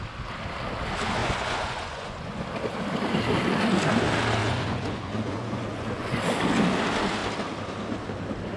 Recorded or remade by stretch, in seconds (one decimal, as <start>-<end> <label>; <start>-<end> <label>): 0.0-1.2 recorded; 1.2-2.4 remade; 2.4-4.4 recorded; 4.4-6.2 remade; 6.2-8.6 recorded

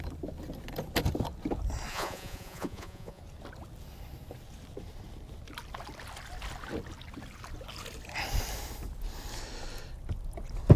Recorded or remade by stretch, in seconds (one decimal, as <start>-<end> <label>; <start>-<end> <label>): 0.0-1.9 recorded; 1.9-3.2 remade; 3.2-10.8 recorded

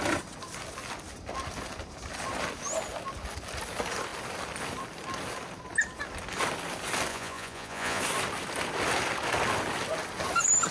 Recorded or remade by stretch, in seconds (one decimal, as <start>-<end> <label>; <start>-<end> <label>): 0.0-7.1 recorded; 7.1-8.0 remade; 8.0-10.7 recorded

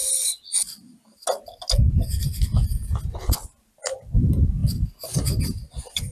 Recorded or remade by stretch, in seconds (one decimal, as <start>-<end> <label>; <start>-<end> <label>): 0.0-6.1 recorded